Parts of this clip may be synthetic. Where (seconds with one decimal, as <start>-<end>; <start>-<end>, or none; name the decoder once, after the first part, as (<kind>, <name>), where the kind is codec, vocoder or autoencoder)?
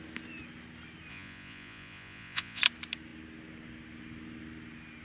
1.1-2.6 (vocoder, Vocos)